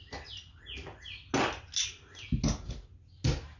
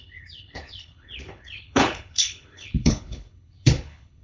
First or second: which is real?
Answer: first